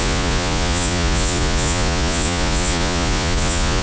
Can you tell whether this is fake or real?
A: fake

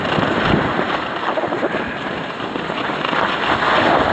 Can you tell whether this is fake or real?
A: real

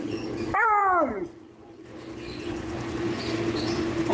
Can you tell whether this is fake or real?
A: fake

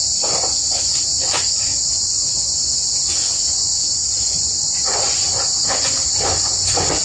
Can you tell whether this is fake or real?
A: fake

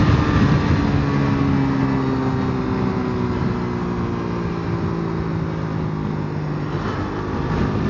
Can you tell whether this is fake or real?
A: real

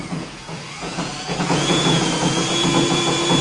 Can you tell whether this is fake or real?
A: fake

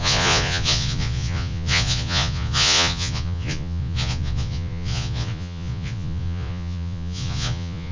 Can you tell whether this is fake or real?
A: fake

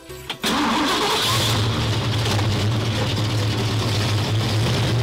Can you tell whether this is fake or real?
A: real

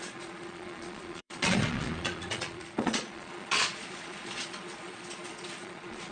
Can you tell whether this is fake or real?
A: fake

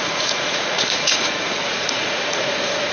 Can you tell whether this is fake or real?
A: fake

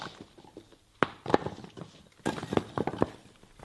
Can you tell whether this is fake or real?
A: real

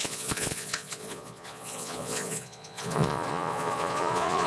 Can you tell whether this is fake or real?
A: fake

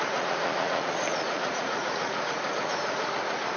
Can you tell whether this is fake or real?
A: fake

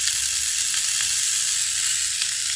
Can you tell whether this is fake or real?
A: real